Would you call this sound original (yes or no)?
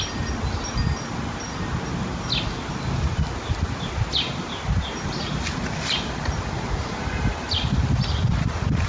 yes